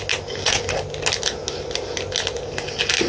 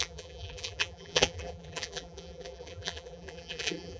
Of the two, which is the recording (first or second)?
first